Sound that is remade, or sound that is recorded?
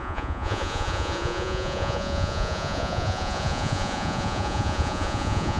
remade